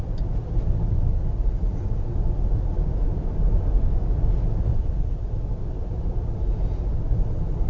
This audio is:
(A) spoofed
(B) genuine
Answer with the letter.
B